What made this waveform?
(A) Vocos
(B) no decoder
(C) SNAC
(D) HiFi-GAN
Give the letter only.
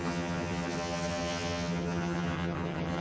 D